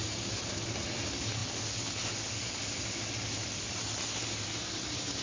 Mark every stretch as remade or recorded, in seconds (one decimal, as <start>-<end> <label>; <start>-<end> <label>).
0.0-5.2 recorded